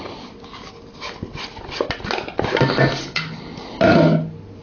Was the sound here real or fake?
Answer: real